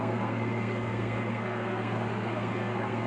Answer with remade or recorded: remade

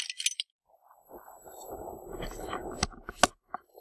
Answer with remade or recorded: recorded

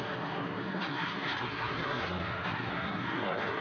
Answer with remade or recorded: remade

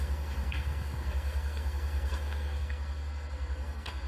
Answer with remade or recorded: remade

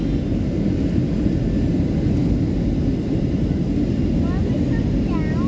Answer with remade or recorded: recorded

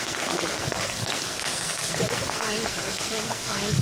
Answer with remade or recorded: remade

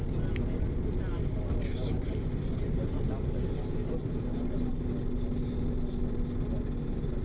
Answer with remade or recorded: recorded